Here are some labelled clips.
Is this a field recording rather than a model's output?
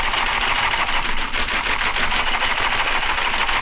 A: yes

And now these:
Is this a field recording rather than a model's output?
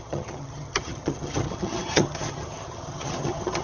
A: no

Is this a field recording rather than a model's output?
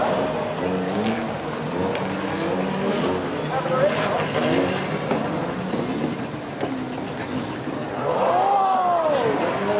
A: yes